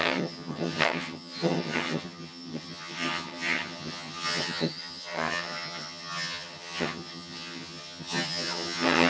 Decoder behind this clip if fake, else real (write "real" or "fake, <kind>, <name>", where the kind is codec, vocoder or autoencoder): fake, vocoder, HiFi-GAN